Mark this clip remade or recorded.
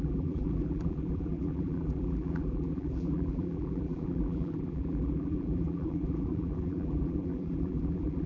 remade